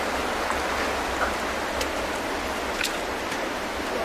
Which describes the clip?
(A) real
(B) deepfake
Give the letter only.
A